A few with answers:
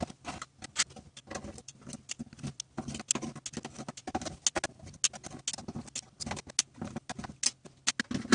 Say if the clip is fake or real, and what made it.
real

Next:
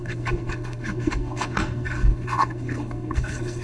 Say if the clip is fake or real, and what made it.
fake, codec, SNAC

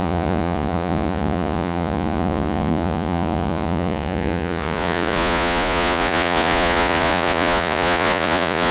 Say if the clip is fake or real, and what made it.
fake, vocoder, Vocos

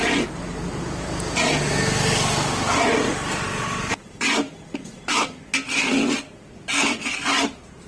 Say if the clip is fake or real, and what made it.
real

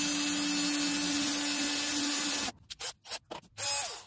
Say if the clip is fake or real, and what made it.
real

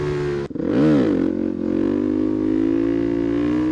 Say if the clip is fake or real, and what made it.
real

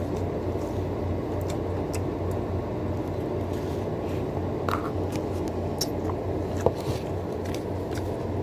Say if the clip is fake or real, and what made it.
real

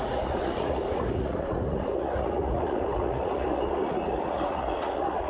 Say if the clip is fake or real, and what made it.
fake, vocoder, Vocos